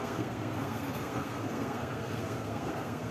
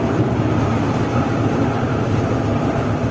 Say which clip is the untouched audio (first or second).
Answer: second